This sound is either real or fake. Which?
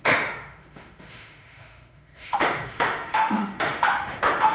fake